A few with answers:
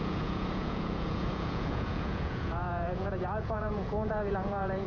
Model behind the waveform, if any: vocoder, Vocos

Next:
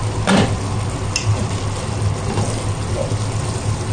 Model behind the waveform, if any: none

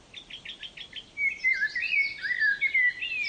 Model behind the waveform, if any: none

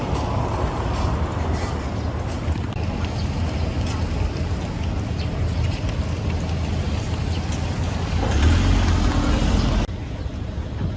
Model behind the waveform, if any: none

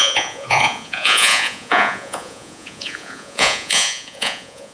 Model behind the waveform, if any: vocoder, Vocos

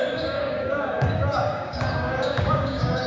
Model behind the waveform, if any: codec, DAC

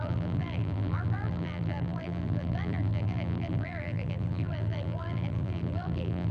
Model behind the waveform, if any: vocoder, BigVGAN v2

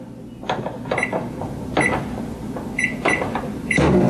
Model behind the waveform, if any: none